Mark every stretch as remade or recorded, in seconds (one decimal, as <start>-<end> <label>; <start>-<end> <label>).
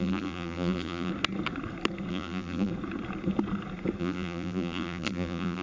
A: 0.0-1.1 remade; 1.1-2.1 recorded; 2.1-2.7 remade; 2.7-4.0 recorded; 4.0-5.6 remade